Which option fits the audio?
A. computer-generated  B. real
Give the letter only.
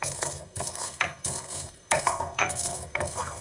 A